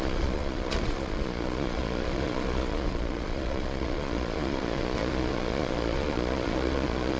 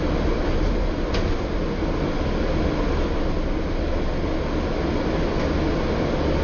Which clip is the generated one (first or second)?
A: first